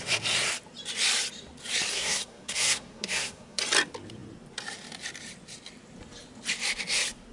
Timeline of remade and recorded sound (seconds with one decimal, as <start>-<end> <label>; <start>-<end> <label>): 0.0-1.9 recorded; 1.9-3.6 remade; 3.6-7.3 recorded